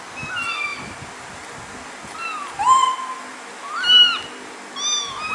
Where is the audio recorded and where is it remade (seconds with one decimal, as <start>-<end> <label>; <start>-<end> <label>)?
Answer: 0.0-5.3 recorded